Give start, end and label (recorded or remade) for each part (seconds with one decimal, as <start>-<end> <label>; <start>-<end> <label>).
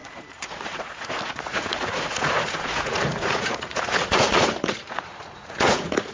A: 0.0-6.1 remade